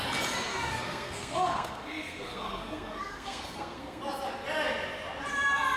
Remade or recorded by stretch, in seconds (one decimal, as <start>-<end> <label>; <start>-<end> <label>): 0.0-0.5 recorded; 0.5-4.0 remade; 4.0-5.8 recorded